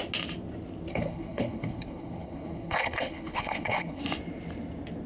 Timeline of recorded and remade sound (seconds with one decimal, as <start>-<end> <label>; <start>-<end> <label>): 0.0-0.9 recorded; 0.9-4.0 remade; 4.0-5.1 recorded